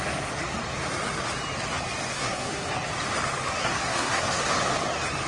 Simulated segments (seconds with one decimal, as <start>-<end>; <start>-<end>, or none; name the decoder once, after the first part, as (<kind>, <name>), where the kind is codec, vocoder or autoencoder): 2.1-2.7 (codec, SNAC); 3.6-4.5